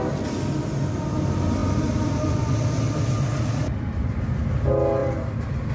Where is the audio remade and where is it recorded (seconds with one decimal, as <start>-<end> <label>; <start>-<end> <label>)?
0.0-1.6 recorded; 1.6-4.5 remade; 4.5-5.0 recorded; 5.0-5.7 remade